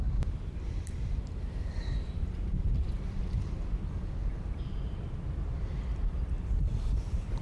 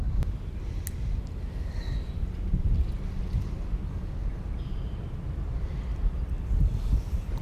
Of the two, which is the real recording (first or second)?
second